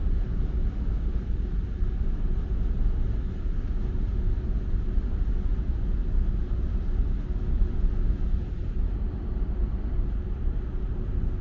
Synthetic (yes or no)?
no